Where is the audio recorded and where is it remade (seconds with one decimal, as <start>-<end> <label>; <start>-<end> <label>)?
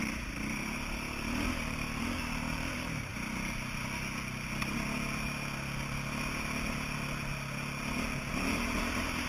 0.0-3.1 remade; 3.1-8.3 recorded; 8.3-9.3 remade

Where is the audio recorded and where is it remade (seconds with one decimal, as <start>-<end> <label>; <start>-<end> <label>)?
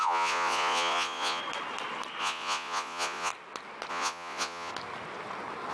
0.0-1.4 remade; 1.4-2.2 recorded; 2.2-3.3 remade; 3.3-3.9 recorded; 3.9-4.7 remade; 4.7-5.7 recorded